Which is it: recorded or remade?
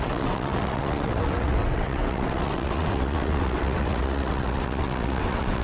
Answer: remade